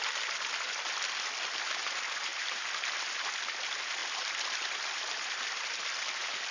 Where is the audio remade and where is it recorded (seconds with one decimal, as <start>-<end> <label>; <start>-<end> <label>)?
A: 0.0-6.5 recorded